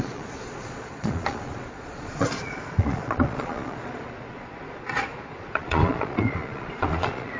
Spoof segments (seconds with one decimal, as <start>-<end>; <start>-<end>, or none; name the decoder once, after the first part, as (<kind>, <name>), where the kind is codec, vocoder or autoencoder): 0.0-7.4 (vocoder, Vocos)